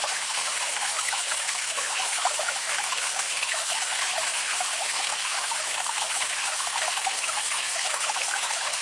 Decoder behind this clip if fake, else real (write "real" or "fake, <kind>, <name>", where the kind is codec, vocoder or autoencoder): fake, autoencoder, DAC-VAE